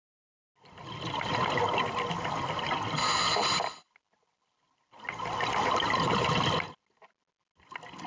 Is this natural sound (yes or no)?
yes